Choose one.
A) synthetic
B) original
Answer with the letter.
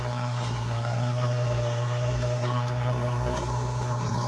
A